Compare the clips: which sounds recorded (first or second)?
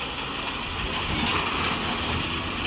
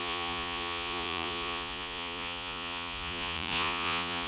first